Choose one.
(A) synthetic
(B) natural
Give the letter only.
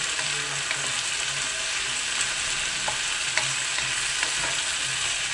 B